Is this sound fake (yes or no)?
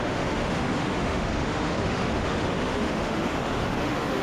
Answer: yes